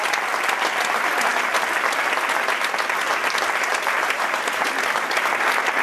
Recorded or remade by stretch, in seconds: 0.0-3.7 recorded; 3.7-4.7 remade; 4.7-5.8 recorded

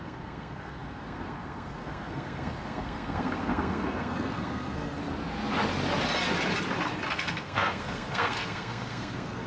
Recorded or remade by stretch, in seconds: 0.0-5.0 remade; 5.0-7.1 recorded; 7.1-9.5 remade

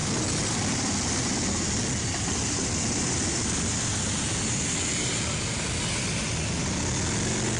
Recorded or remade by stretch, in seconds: 0.0-7.6 recorded

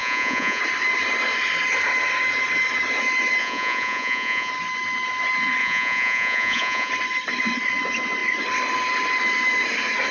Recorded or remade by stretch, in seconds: 0.0-0.6 remade; 0.6-3.4 recorded; 3.4-4.5 remade; 4.5-5.6 recorded; 5.6-6.9 remade; 6.9-10.1 recorded

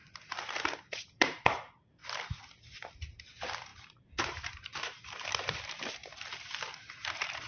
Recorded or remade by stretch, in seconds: 0.0-2.0 remade; 2.0-3.0 recorded; 3.0-7.5 remade

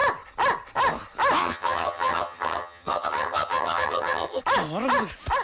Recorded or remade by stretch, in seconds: 0.0-1.4 recorded; 1.4-4.4 remade; 4.4-5.4 recorded

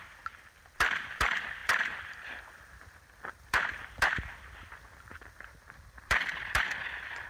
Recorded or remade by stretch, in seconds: 0.0-7.3 remade

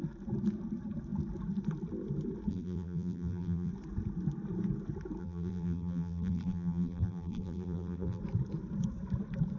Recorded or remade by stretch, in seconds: 0.0-2.5 recorded; 2.5-3.7 remade; 3.7-5.2 recorded; 5.2-8.2 remade; 8.2-9.6 recorded